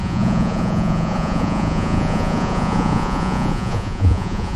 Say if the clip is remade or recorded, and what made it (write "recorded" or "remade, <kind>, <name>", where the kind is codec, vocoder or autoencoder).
remade, vocoder, Vocos